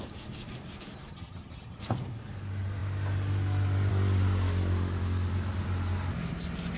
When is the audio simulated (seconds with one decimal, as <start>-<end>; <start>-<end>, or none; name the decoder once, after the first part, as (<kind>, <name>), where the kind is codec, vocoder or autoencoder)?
1.1-1.8 (vocoder, HiFi-GAN)